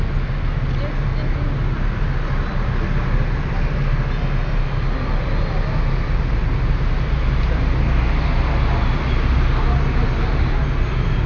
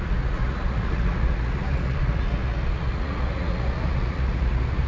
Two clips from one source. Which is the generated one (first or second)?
second